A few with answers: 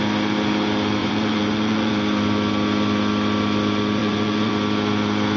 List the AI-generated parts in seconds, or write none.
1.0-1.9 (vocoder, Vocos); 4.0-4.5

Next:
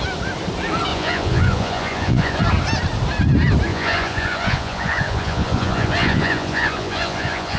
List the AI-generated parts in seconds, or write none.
0.9-2.4 (vocoder, Vocos); 3.7-7.6